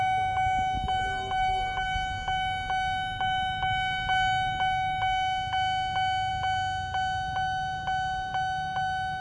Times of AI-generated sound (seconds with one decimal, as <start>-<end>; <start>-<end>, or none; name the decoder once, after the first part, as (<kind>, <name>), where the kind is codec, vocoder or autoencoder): none